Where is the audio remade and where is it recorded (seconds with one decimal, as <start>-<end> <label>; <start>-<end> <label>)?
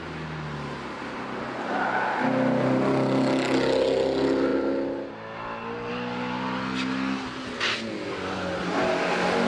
0.0-9.5 recorded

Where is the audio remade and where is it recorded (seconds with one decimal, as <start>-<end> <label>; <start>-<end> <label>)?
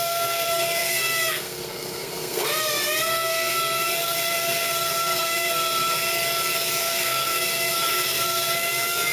0.0-6.1 remade; 6.1-6.8 recorded; 6.8-9.1 remade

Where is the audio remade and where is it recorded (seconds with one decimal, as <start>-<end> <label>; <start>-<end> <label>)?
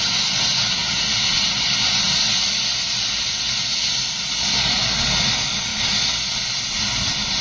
0.0-7.4 recorded